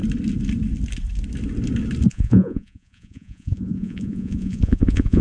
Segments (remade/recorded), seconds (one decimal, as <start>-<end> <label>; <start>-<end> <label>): 0.0-2.1 recorded; 2.1-5.2 remade